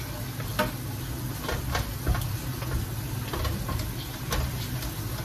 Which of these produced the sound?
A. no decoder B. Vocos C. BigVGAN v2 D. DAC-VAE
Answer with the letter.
A